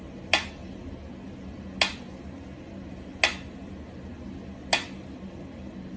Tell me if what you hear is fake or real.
real